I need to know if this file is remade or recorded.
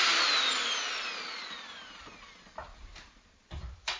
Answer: recorded